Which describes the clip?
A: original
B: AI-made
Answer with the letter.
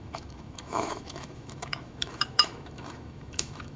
B